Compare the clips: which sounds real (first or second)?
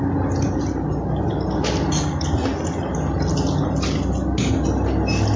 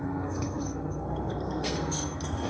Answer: first